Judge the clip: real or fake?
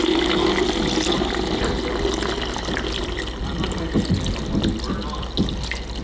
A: real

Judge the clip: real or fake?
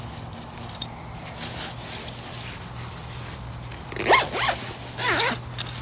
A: real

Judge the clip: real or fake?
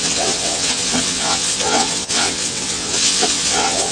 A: fake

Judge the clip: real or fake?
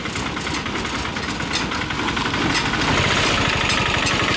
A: real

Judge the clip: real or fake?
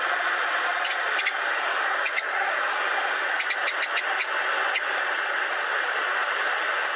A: real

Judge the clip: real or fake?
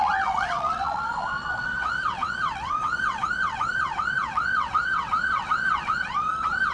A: fake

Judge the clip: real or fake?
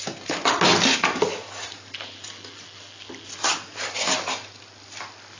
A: real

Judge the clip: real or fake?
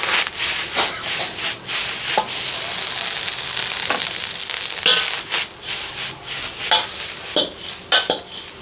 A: real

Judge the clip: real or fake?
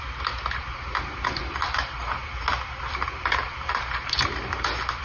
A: real